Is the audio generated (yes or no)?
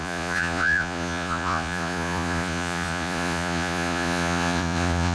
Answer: yes